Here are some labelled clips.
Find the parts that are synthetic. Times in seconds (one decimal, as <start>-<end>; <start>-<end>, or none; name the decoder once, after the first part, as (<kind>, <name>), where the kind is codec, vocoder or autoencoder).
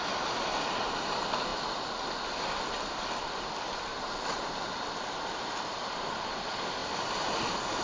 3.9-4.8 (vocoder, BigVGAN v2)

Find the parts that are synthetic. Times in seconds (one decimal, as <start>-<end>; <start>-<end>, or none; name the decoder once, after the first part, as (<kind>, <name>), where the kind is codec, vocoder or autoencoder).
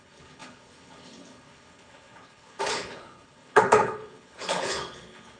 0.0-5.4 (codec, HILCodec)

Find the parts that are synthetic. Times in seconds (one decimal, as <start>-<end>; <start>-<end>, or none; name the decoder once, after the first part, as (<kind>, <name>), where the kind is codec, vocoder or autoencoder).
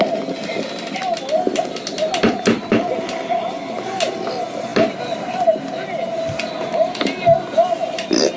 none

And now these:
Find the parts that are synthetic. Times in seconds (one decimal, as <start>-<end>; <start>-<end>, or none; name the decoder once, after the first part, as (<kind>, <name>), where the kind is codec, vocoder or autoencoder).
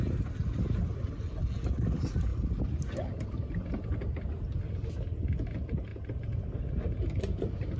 5.9-6.4 (vocoder, BigVGAN v2)